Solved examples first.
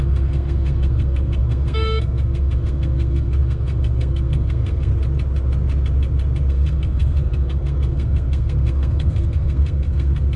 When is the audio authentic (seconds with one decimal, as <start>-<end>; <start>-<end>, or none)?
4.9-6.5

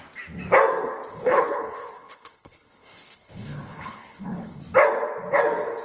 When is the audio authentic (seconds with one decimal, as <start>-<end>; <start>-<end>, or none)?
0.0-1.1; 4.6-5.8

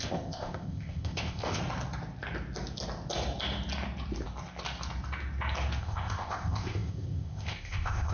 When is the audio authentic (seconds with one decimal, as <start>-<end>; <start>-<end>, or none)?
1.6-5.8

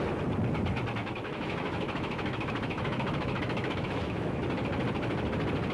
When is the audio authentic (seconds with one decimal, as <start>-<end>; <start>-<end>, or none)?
0.0-1.0; 4.4-5.7

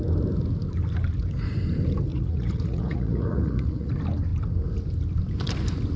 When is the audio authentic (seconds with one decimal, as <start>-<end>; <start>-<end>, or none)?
0.0-2.1; 3.9-6.0